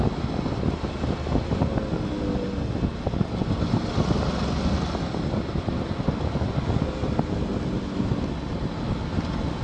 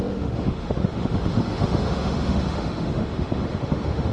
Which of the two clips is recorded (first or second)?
first